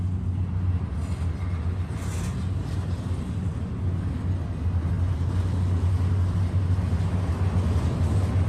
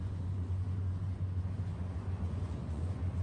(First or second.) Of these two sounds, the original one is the first